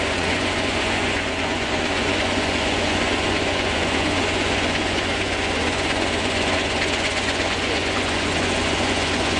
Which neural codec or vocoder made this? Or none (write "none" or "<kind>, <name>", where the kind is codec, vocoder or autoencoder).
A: vocoder, Vocos